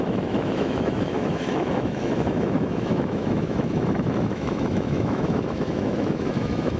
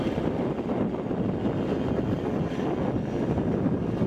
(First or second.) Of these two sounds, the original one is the second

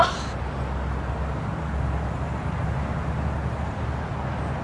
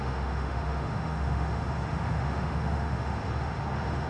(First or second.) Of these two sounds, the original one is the first